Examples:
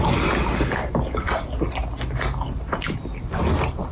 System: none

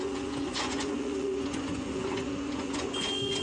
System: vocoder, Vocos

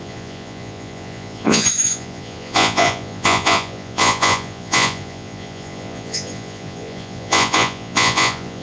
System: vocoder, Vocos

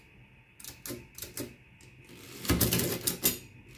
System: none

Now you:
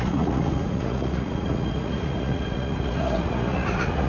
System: vocoder, Vocos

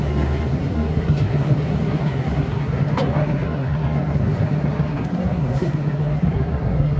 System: codec, SNAC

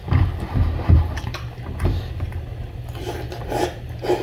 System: none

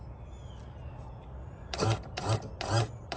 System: none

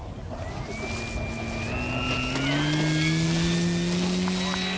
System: none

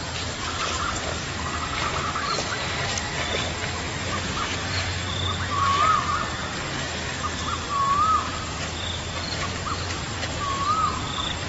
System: none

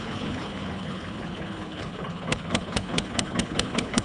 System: codec, HILCodec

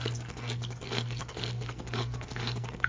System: codec, SNAC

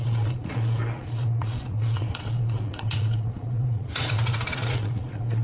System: vocoder, Vocos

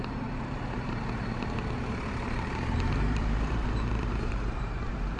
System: vocoder, BigVGAN v2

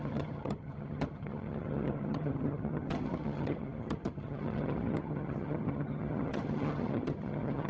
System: vocoder, HiFi-GAN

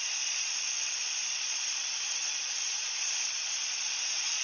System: vocoder, Vocos